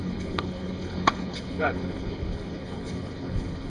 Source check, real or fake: fake